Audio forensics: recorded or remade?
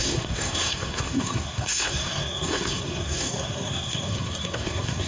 remade